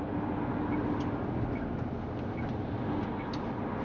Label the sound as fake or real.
real